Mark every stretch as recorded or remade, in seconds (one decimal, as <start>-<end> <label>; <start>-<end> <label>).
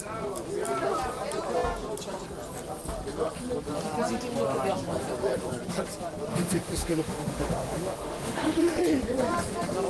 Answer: 0.0-6.3 recorded; 6.3-8.8 remade; 8.8-9.9 recorded